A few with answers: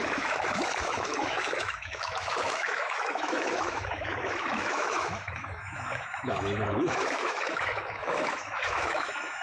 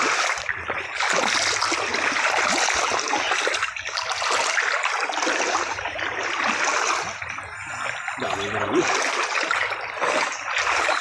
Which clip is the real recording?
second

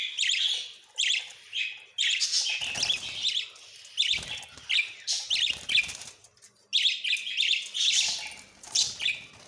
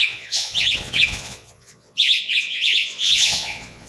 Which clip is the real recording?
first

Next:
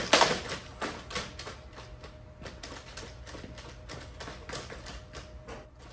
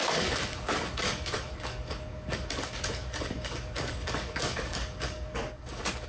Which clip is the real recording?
first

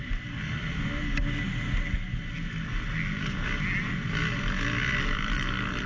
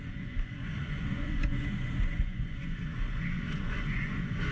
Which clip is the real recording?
first